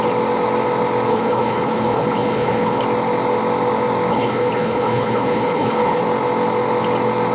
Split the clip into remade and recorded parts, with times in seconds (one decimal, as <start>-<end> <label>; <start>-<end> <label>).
0.0-1.1 recorded; 1.1-2.8 remade; 2.8-4.1 recorded; 4.1-6.0 remade; 6.0-7.3 recorded